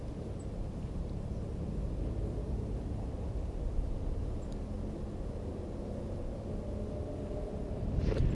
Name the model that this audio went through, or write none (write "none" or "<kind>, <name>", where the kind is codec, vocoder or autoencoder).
none